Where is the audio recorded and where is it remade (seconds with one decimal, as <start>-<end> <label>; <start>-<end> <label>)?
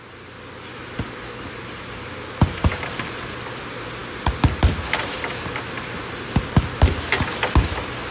0.0-8.1 recorded